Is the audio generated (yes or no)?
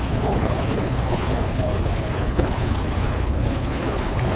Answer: yes